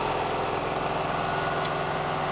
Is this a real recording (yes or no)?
yes